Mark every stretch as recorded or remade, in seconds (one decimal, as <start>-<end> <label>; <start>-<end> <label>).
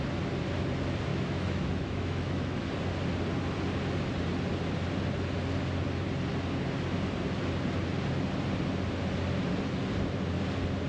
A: 0.0-1.1 recorded; 1.1-2.6 remade; 2.6-10.9 recorded